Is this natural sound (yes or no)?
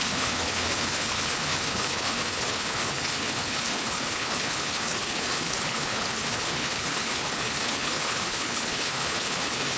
no